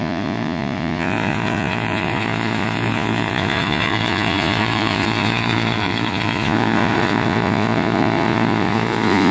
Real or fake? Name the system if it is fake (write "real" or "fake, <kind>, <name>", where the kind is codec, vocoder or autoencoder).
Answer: fake, vocoder, Vocos